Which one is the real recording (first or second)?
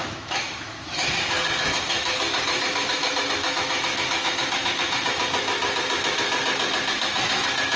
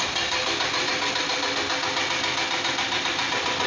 second